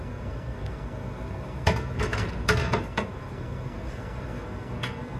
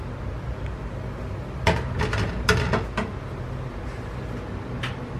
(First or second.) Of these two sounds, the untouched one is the second